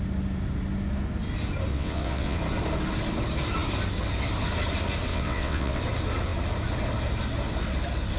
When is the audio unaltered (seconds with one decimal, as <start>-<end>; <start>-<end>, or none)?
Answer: 0.0-1.7; 2.4-5.1; 5.8-8.2